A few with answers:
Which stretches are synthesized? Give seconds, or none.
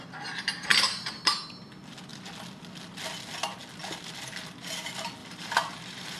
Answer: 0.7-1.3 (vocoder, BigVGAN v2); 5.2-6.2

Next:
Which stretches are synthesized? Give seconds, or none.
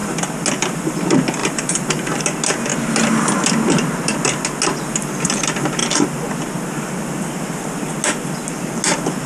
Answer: 1.4-2.2 (vocoder, BigVGAN v2)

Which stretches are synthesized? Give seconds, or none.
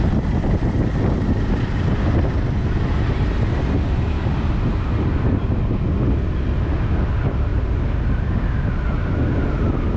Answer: 7.5-8.3 (vocoder, BigVGAN v2)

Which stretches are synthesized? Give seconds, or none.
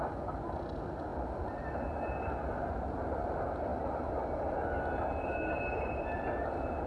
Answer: none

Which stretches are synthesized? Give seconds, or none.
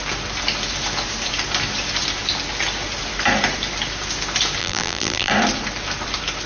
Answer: 4.6-5.3 (vocoder, BigVGAN v2)